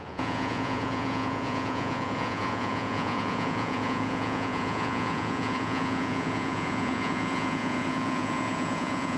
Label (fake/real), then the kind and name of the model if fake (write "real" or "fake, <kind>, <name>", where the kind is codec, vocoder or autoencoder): fake, vocoder, Vocos